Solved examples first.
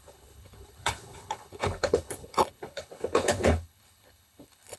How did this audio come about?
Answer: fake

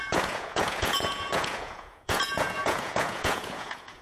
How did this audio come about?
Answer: fake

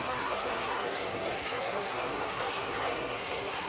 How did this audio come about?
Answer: fake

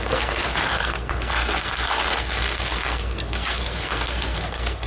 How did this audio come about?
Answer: fake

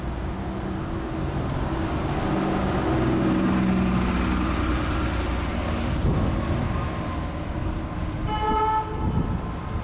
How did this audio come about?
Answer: real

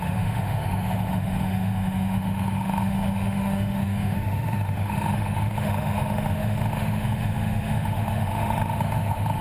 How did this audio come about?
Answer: fake